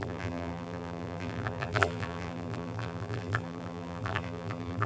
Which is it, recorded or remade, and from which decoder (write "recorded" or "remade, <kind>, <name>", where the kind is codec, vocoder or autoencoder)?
remade, vocoder, BigVGAN v2